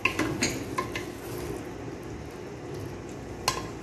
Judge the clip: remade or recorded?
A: recorded